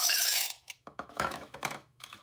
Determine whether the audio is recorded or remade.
remade